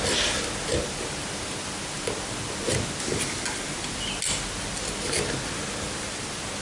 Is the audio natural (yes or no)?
yes